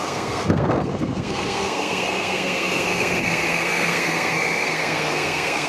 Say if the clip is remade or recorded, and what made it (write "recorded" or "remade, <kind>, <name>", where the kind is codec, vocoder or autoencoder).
remade, codec, SNAC